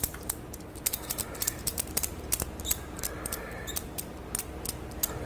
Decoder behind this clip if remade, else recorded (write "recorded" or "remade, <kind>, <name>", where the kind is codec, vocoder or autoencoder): remade, vocoder, BigVGAN v2